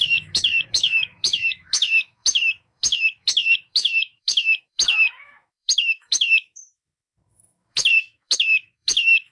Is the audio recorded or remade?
remade